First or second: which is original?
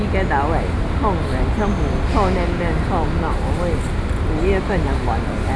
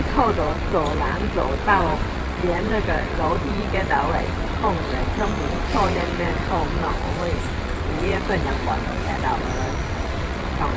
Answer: first